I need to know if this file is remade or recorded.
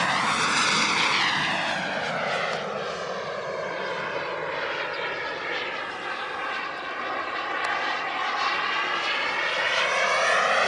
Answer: recorded